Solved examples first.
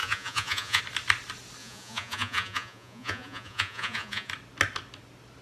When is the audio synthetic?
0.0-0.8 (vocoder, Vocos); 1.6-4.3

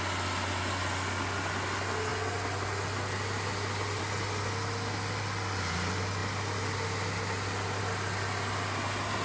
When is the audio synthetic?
none

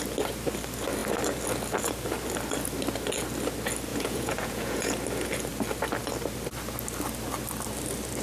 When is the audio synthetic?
3.9-4.9 (vocoder, Vocos)

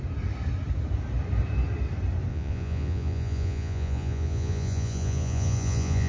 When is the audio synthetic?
2.3-6.1 (vocoder, Vocos)

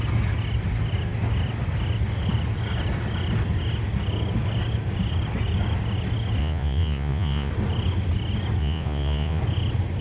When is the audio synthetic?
6.4-7.5 (vocoder, Vocos); 8.6-9.4

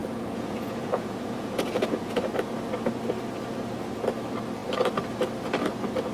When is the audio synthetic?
0.0-2.2 (vocoder, Vocos)

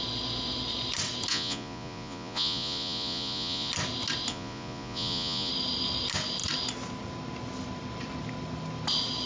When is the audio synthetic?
1.3-3.7 (vocoder, Vocos); 4.3-5.5